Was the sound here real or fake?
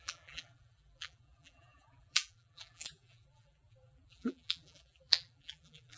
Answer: fake